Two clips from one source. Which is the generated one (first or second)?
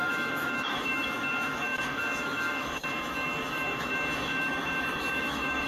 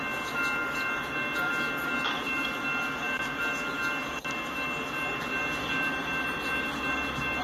first